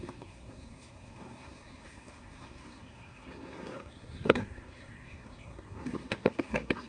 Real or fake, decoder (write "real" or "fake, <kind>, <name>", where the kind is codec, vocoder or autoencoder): fake, codec, SNAC